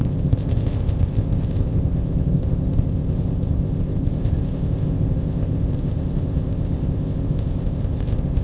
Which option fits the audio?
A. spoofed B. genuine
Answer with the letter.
A